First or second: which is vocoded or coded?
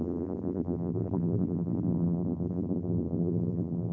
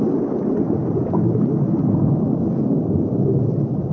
first